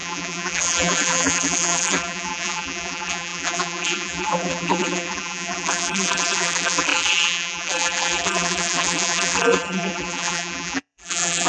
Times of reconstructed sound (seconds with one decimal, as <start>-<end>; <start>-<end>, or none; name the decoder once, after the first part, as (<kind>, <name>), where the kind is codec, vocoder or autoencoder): 0.0-11.5 (vocoder, BigVGAN v2)